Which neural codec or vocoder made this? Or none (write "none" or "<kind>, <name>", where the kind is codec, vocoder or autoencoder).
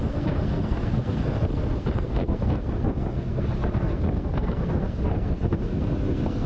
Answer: codec, SNAC